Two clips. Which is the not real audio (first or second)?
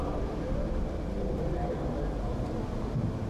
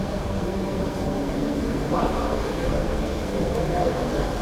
second